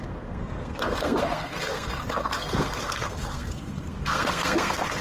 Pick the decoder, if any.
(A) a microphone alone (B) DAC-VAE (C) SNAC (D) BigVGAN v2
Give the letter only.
C